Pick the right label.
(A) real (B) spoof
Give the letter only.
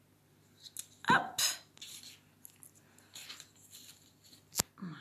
A